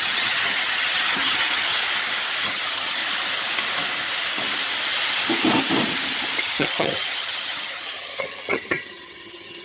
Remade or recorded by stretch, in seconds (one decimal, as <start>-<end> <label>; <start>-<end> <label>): 0.0-1.7 remade; 1.7-2.4 recorded; 2.4-3.0 remade; 3.0-6.4 recorded; 6.4-9.6 remade